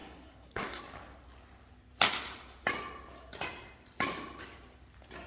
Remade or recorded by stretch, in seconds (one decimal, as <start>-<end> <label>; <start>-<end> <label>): 0.0-0.8 remade; 0.8-5.3 recorded